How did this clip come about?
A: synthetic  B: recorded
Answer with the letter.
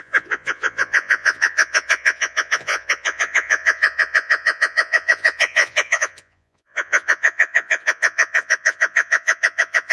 A